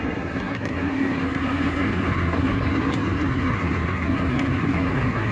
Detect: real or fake fake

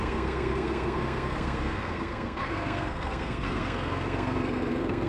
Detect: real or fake fake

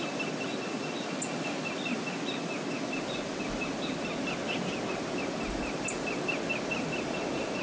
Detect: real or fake real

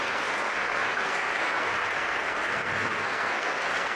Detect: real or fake fake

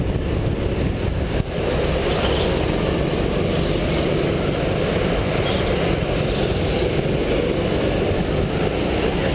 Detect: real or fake real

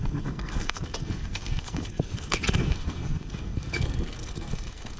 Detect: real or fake fake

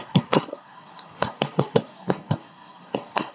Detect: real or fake fake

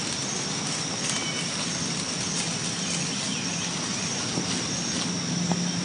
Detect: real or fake real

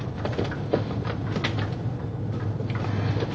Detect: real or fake real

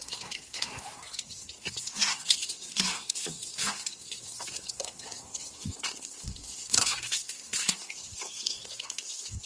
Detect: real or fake fake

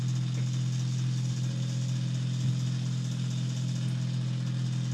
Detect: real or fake real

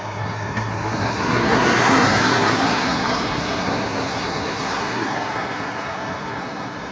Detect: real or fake fake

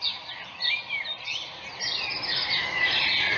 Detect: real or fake real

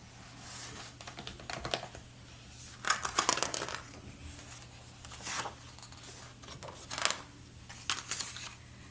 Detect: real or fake real